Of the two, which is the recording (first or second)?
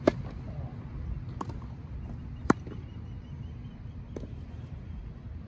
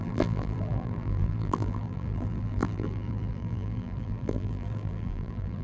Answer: first